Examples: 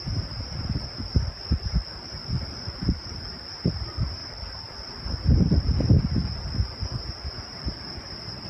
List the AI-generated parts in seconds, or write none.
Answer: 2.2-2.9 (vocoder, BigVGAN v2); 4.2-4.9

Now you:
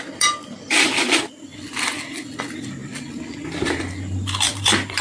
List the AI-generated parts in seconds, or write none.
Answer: none

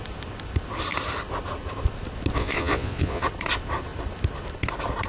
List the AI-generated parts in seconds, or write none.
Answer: 2.4-3.2 (vocoder, Vocos)

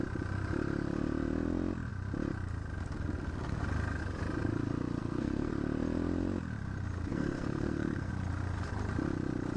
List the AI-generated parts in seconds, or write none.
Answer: 5.0-5.5 (codec, SNAC); 7.1-8.1